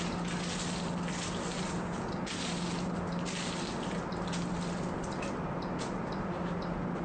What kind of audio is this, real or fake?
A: real